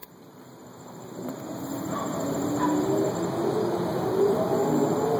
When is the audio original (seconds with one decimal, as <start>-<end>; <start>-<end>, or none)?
3.1-3.9